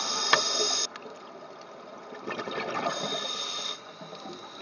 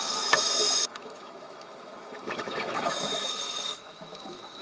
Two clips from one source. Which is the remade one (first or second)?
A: second